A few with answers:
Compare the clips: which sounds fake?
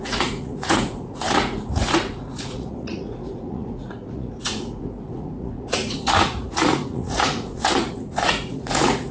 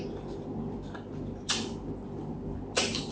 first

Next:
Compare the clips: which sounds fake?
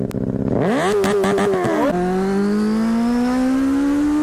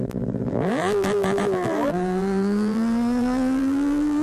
second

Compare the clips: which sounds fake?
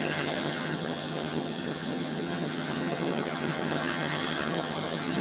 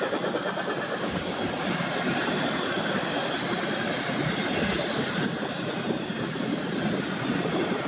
first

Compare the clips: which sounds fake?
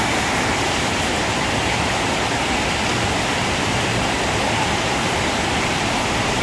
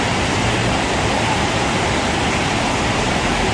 first